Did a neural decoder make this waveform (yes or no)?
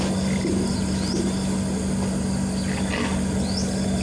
no